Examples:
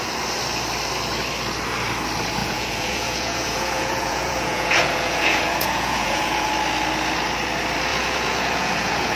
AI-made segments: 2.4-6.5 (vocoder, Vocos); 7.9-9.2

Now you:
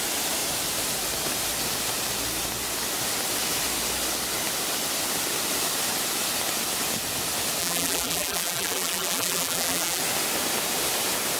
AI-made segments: 7.6-10.0 (vocoder, BigVGAN v2)

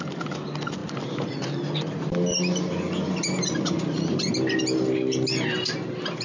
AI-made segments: none

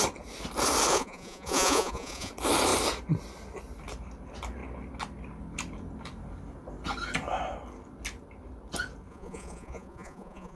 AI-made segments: 0.9-2.3 (vocoder, Vocos); 9.1-10.6

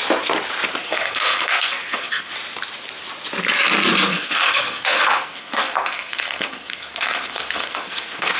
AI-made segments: 0.8-2.3 (codec, SNAC); 4.1-8.4

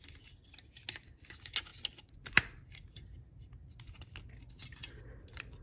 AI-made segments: none

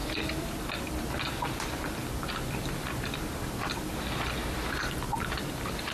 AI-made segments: 0.0-5.9 (vocoder, BigVGAN v2)